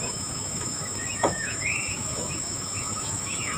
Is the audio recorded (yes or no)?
no